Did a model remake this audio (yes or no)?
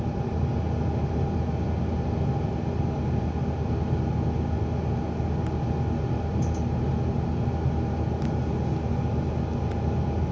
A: no